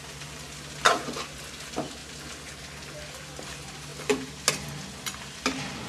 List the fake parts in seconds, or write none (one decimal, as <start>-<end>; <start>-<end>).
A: none

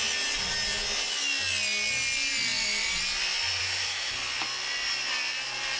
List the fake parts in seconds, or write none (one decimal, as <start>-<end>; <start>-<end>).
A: 3.6-4.1